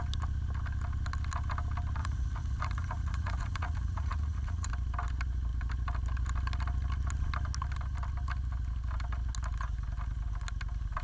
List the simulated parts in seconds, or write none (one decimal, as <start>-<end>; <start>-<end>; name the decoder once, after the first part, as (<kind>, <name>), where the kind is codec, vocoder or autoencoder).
2.0-4.7 (vocoder, Vocos)